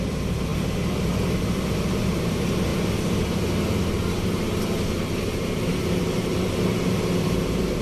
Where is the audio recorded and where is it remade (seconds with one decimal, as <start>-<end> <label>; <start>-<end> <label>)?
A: 0.0-2.7 remade; 2.7-5.0 recorded; 5.0-7.8 remade